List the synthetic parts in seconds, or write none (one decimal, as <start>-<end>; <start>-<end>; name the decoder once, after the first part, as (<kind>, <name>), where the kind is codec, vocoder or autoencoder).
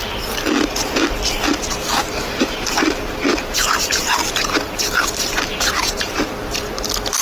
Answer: 2.0-6.3 (vocoder, BigVGAN v2)